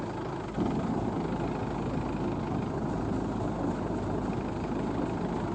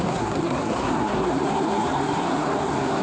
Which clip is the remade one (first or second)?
second